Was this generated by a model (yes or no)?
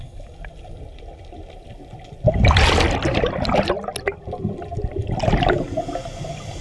no